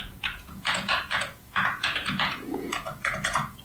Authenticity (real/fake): fake